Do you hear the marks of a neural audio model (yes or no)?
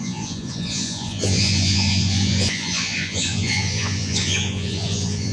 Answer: yes